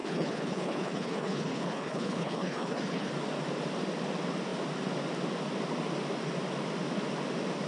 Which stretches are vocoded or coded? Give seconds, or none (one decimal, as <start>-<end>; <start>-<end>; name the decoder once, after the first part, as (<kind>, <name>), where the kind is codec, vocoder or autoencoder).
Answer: 0.0-3.1 (codec, HILCodec)